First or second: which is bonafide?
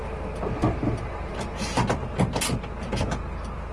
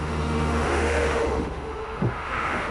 first